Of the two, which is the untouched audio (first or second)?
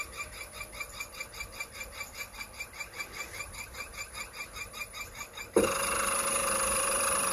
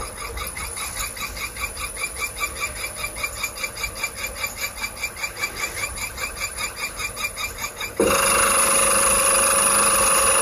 second